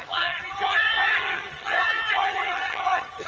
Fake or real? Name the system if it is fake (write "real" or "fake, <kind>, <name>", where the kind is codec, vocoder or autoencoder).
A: fake, vocoder, HiFi-GAN